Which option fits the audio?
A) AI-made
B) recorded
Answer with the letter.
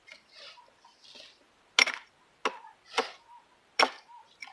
B